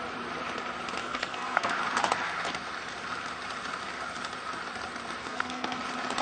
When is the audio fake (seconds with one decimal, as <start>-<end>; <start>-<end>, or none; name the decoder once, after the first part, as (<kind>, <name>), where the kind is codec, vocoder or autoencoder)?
1.0-1.7 (codec, SNAC); 5.2-5.8